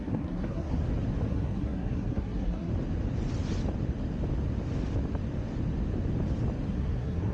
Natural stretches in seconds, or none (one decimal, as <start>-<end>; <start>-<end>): 0.8-1.3; 2.7-6.7